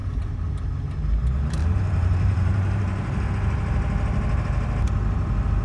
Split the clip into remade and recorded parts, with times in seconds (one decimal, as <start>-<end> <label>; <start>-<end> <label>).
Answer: 0.0-0.7 remade; 0.7-1.6 recorded; 1.6-3.3 remade; 3.3-5.6 recorded